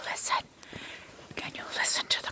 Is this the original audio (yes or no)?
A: no